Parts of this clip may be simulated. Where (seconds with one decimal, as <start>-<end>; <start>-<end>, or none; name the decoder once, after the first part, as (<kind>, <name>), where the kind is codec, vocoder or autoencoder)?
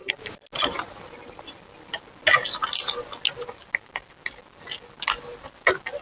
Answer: none